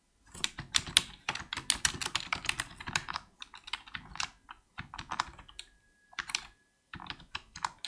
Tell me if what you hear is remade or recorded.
recorded